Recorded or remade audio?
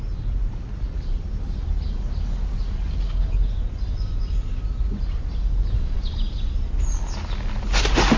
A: recorded